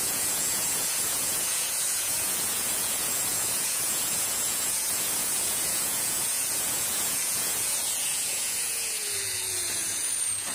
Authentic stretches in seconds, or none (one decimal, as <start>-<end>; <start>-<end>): none